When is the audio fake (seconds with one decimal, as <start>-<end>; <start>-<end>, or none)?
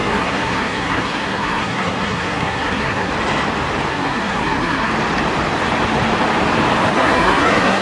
0.0-3.1; 3.9-4.9; 6.9-7.8